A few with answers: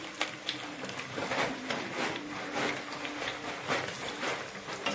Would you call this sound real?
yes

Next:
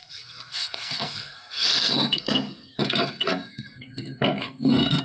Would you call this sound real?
no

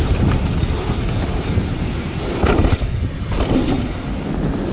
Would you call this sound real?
yes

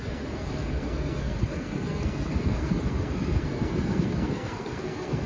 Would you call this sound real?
no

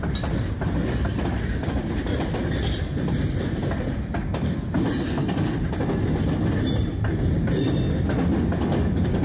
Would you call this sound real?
yes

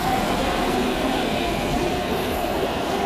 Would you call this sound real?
no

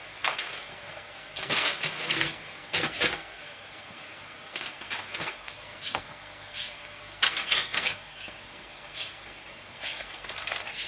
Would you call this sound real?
no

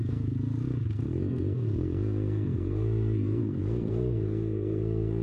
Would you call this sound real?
no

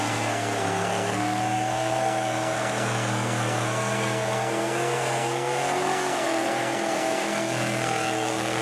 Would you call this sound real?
no